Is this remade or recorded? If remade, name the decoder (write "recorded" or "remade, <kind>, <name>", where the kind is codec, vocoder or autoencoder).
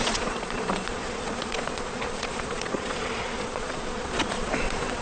remade, vocoder, Vocos